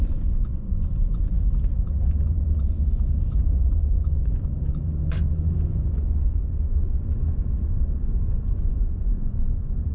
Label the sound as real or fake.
fake